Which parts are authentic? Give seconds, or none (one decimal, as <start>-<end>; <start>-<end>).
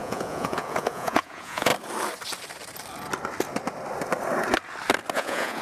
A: 1.7-5.1